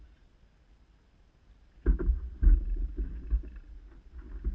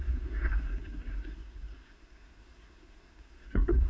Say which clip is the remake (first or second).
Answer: second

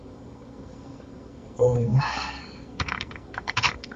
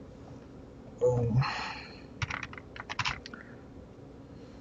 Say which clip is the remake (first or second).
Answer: first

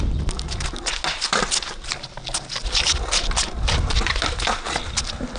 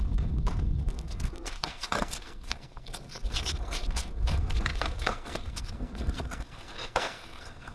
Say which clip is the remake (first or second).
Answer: second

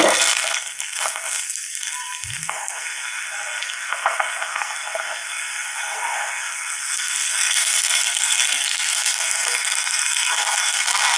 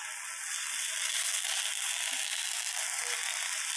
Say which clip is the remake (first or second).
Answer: first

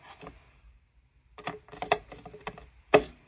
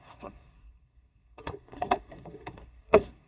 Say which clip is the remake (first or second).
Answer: second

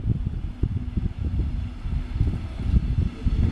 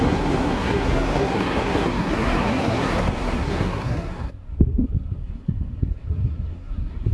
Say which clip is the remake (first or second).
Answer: second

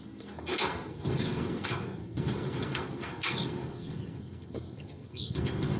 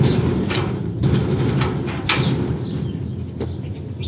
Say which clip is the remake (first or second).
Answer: first